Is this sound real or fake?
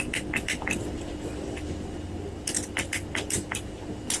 real